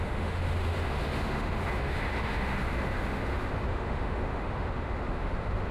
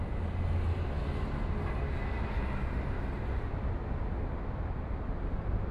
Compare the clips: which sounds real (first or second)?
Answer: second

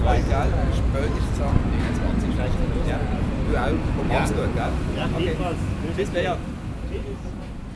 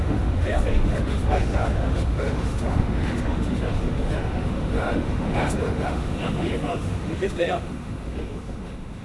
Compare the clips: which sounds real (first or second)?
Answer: first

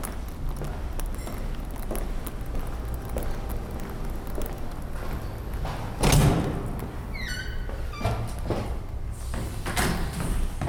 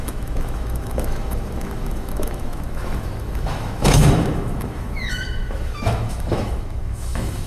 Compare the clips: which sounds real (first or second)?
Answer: first